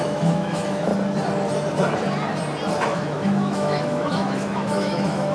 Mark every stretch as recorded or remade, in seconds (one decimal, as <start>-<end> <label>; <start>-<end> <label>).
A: 0.0-0.9 remade; 0.9-2.8 recorded; 2.8-5.3 remade

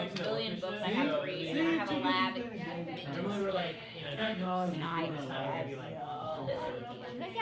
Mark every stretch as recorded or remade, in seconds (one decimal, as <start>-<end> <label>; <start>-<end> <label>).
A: 0.0-3.4 recorded; 3.4-5.0 remade; 5.0-6.0 recorded; 6.0-6.7 remade; 6.7-7.4 recorded